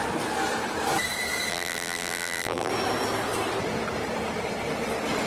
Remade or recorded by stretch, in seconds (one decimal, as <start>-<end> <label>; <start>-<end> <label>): 0.0-1.5 recorded; 1.5-2.7 remade; 2.7-5.3 recorded